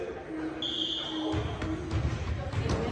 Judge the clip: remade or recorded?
recorded